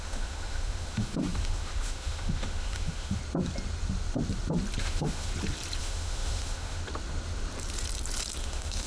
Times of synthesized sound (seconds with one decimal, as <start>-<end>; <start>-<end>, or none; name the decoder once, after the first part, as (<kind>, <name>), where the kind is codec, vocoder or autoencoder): 0.0-3.2 (autoencoder, DAC-VAE); 4.8-5.3; 5.8-6.8; 8.4-8.9